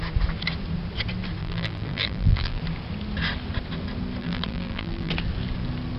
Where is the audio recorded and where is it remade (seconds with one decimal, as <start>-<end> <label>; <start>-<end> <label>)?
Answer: 0.0-1.4 recorded; 1.4-2.6 remade; 2.6-4.2 recorded; 4.2-5.1 remade; 5.1-6.0 recorded